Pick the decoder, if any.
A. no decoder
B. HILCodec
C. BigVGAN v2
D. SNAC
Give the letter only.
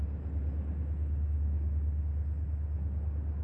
A